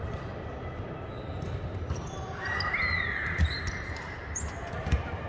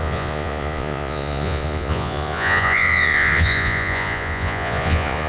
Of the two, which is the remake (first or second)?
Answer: second